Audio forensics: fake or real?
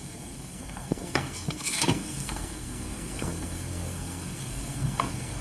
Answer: fake